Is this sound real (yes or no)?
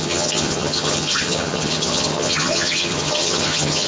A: no